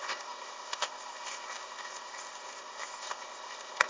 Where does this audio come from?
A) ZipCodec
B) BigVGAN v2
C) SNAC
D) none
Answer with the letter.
A